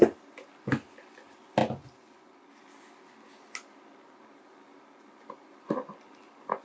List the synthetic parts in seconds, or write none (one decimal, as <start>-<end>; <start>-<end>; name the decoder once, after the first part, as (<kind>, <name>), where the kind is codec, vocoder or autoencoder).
none